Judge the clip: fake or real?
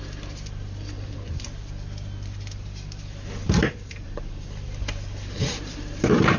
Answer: fake